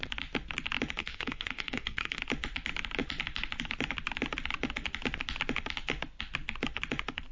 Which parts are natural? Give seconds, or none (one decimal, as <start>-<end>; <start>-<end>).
0.0-1.0; 2.2-7.3

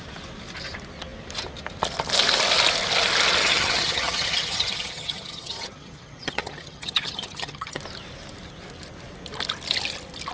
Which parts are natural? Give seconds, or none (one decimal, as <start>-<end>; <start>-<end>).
0.0-3.4; 7.8-10.3

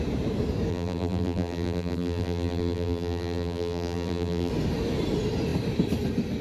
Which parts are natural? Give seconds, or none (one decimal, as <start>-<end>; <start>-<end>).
0.0-0.7; 4.5-6.4

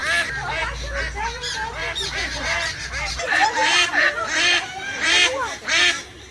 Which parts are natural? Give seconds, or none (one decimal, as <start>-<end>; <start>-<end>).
0.0-1.8; 5.6-6.3

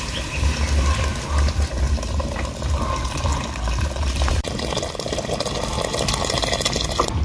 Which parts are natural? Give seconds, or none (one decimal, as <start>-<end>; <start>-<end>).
0.0-7.2